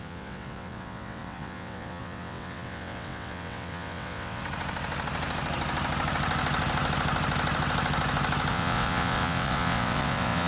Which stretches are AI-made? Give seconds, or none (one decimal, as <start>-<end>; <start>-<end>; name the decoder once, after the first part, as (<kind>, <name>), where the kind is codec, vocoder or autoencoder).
0.0-4.4 (vocoder, WaveNeXt); 8.5-10.5